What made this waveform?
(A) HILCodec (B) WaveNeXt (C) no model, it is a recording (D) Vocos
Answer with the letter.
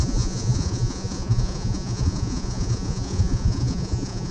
D